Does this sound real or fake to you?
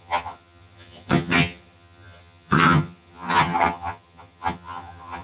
fake